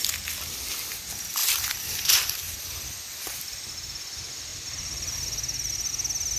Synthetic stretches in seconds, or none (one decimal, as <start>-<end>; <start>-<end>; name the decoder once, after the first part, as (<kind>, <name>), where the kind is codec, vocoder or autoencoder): 1.4-3.7 (vocoder, BigVGAN v2); 4.5-5.9